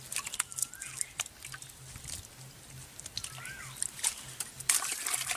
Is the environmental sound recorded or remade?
recorded